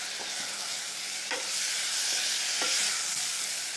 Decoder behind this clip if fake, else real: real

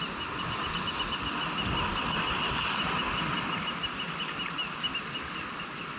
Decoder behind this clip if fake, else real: real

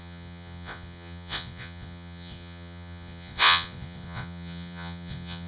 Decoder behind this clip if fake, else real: fake, vocoder, Vocos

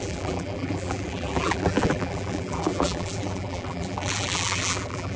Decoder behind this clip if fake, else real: fake, vocoder, BigVGAN v2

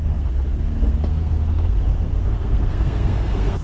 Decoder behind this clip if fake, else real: fake, codec, SNAC